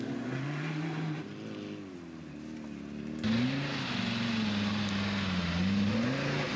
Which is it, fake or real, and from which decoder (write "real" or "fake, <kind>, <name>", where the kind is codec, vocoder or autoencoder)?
real